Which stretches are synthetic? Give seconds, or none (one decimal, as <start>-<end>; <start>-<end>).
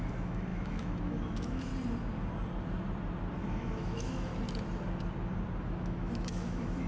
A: 0.0-1.7; 3.4-4.3; 5.6-6.9